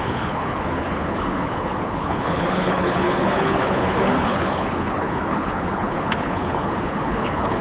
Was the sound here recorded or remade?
remade